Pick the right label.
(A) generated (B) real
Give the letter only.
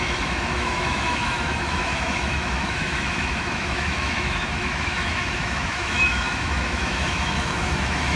A